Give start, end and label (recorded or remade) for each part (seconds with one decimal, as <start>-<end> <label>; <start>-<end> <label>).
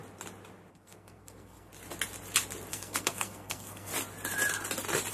0.0-0.7 recorded; 0.7-1.7 remade; 1.7-2.7 recorded; 2.7-3.9 remade; 3.9-5.1 recorded